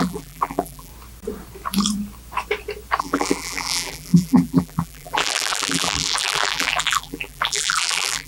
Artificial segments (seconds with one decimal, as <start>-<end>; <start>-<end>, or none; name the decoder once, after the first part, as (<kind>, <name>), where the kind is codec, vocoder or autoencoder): 0.0-0.9 (vocoder, BigVGAN v2); 3.0-8.3